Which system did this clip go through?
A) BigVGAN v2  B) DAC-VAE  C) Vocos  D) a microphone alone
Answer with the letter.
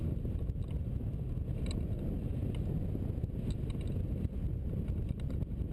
D